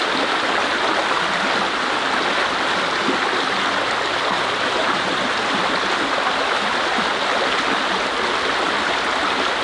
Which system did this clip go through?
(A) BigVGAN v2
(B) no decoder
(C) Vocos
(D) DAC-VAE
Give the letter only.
B